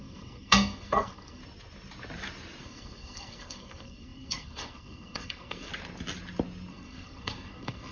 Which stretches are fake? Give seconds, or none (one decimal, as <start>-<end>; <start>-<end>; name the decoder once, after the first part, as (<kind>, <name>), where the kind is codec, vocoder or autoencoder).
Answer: 0.0-1.4 (codec, SNAC); 2.6-5.7; 6.7-7.9